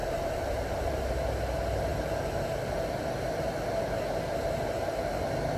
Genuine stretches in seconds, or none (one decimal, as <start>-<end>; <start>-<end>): 1.0-5.6